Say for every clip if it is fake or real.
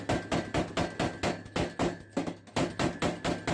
real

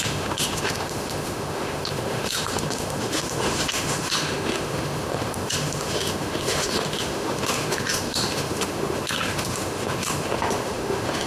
fake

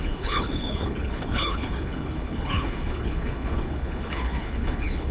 fake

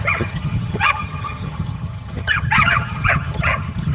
fake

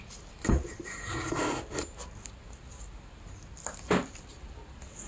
real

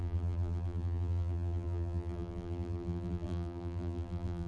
fake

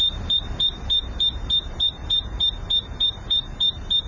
fake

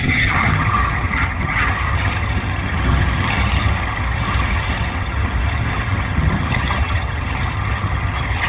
fake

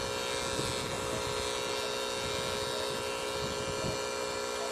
real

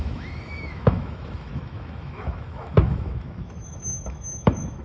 fake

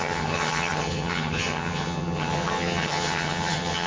fake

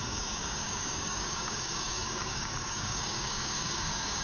fake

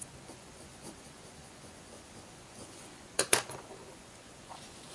fake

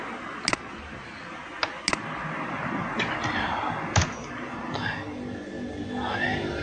real